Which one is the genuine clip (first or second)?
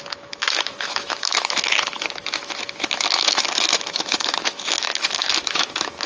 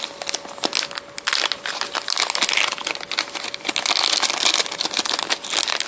second